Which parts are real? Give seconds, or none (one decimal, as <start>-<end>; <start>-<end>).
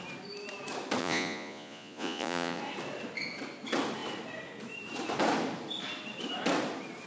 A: 0.0-1.0; 2.6-7.1